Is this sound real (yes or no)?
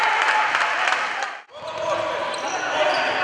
yes